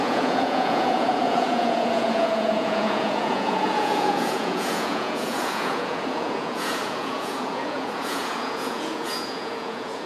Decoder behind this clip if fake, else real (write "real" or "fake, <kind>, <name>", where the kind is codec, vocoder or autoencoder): fake, vocoder, Vocos